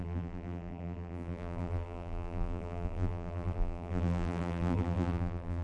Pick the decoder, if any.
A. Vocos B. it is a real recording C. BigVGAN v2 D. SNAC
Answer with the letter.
C